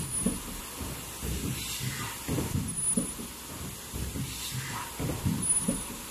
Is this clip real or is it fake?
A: real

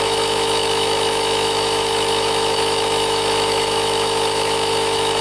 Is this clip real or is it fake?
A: fake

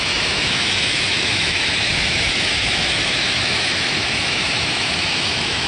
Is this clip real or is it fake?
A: fake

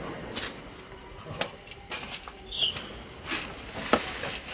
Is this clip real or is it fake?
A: real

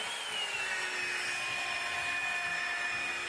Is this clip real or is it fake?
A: real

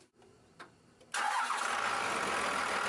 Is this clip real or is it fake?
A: real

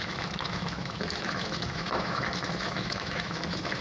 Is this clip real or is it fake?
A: fake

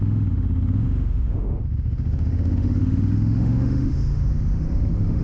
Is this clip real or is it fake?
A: fake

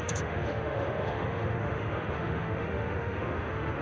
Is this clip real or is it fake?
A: fake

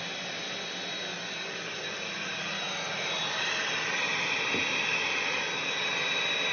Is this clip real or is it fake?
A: real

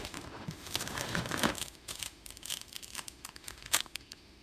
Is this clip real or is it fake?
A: fake